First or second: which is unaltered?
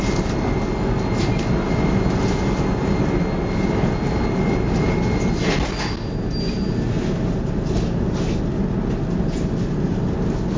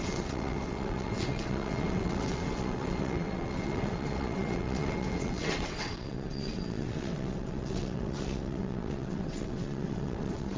first